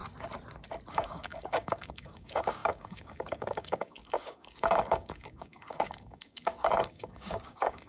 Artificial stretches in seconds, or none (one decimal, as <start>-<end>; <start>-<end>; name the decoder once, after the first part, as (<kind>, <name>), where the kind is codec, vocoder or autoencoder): 0.9-7.9 (codec, DAC)